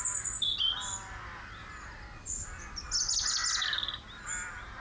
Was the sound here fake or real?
real